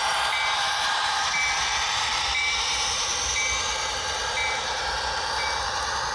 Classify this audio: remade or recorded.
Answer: remade